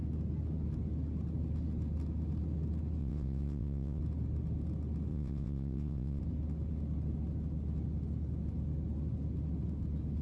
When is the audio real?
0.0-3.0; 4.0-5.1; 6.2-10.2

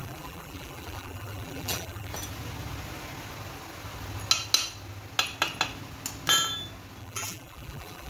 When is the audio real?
2.1-7.0

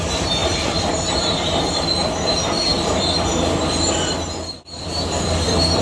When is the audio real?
0.0-0.4; 1.7-2.7